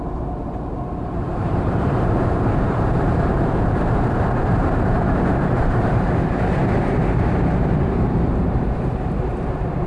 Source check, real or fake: fake